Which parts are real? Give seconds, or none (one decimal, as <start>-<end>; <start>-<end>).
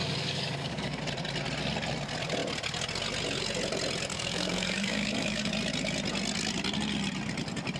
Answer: 1.0-4.1; 5.5-7.8